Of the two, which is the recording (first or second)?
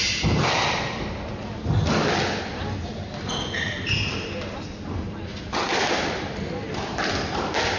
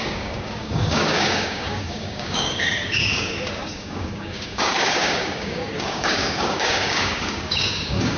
first